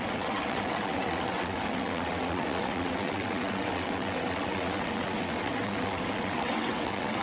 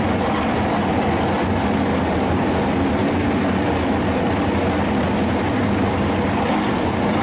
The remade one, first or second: first